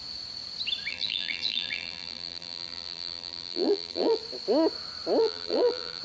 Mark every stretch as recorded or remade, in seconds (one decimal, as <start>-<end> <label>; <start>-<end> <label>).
0.0-0.9 recorded; 0.9-4.2 remade; 4.2-5.2 recorded; 5.2-6.0 remade